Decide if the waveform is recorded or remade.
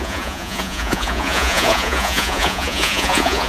remade